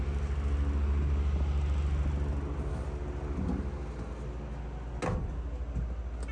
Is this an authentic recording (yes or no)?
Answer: yes